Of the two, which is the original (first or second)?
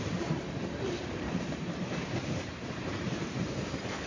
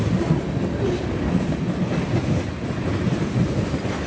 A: second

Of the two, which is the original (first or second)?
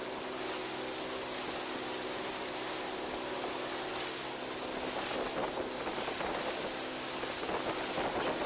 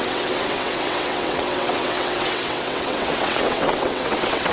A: first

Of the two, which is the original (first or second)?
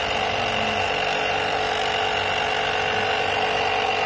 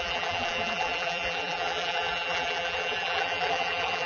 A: first